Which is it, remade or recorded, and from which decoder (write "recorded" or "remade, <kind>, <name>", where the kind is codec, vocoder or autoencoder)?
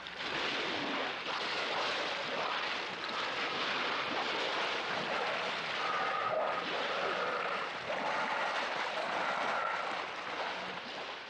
recorded